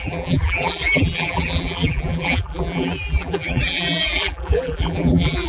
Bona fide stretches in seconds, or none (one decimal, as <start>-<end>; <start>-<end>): none